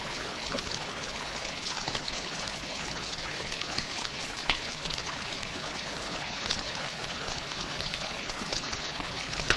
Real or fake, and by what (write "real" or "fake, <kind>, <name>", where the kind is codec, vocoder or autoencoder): fake, codec, HILCodec